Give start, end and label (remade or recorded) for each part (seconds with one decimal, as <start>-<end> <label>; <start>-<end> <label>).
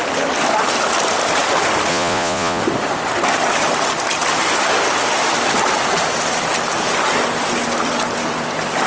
0.0-1.9 recorded; 1.9-2.6 remade; 2.6-8.9 recorded